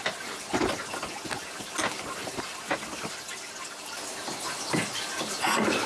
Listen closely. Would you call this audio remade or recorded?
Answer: recorded